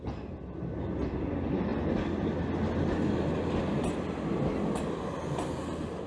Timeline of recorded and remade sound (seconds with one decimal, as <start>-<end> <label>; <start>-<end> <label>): 0.0-6.1 recorded